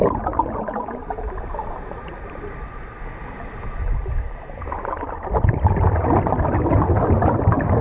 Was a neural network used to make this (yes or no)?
no